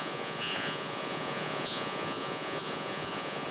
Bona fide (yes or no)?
no